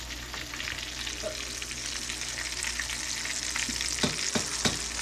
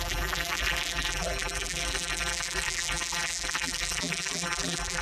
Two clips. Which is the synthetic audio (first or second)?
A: second